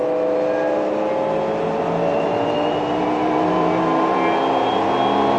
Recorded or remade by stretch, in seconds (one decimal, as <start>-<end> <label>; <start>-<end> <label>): 0.0-5.4 recorded